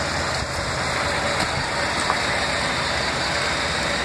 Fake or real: real